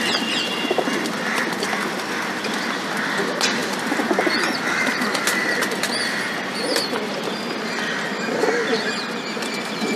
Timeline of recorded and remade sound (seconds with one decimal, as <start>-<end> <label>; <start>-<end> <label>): 0.0-10.0 recorded